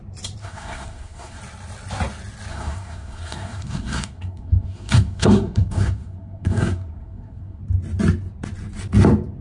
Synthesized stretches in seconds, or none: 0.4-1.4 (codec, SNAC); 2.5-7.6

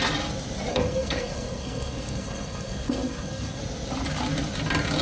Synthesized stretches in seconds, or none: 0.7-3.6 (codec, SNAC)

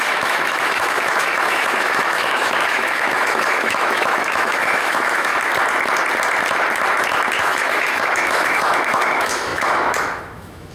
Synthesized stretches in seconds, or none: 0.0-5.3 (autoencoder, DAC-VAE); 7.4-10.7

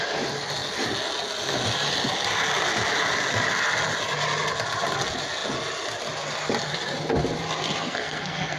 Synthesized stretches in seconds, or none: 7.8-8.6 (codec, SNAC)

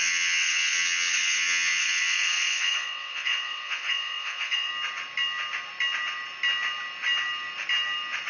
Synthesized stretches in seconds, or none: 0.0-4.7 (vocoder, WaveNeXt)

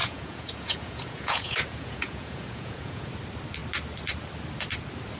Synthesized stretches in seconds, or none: 0.0-3.1 (vocoder, Vocos)

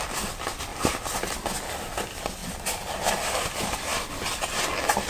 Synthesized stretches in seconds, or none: 0.0-0.7 (vocoder, BigVGAN v2); 1.4-2.4; 3.2-3.9; 4.4-5.1